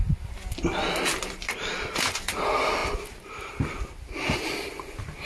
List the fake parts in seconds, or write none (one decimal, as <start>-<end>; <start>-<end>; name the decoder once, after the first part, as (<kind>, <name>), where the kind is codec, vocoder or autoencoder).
none